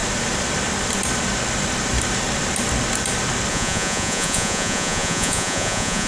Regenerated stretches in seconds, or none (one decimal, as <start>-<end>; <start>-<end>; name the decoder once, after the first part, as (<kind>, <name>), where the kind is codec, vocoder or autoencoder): 3.5-6.1 (vocoder, Vocos)